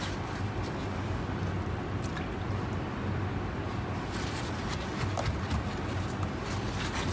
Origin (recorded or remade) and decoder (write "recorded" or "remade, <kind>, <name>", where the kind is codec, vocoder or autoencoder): recorded